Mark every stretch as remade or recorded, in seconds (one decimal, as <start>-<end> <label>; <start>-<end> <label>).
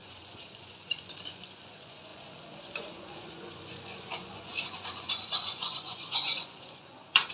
0.0-7.3 remade